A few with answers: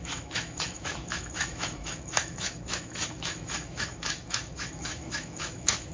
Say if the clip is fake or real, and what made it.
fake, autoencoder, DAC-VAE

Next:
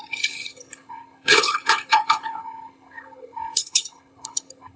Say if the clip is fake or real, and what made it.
fake, codec, HILCodec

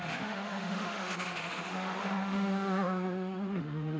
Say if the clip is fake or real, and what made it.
fake, autoencoder, DAC-VAE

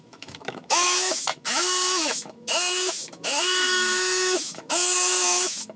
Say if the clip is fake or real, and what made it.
fake, autoencoder, DAC-VAE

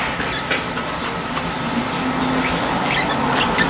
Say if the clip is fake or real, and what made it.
real